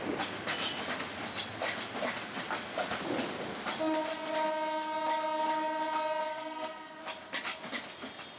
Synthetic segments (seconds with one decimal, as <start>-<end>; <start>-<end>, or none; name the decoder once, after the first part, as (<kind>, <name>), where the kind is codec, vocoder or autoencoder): 6.3-7.0 (codec, SNAC)